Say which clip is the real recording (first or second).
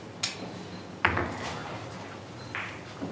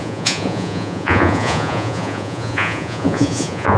first